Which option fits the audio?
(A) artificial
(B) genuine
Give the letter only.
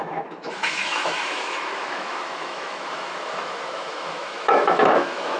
A